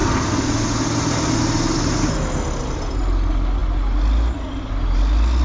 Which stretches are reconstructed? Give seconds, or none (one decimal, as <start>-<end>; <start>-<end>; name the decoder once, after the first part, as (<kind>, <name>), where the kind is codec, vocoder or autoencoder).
none